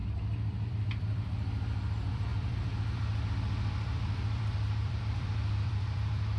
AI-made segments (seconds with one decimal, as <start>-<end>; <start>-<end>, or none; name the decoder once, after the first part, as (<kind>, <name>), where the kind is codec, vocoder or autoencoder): 0.7-6.4 (vocoder, BigVGAN v2)